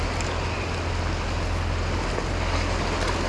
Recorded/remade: recorded